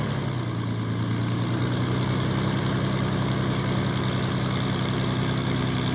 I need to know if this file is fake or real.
real